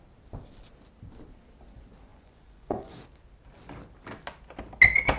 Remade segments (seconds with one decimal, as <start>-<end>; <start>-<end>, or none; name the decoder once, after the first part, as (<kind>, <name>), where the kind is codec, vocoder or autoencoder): 2.1-3.0 (vocoder, Vocos)